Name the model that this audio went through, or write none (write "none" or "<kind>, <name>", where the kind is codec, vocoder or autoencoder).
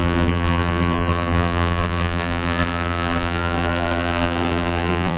vocoder, BigVGAN v2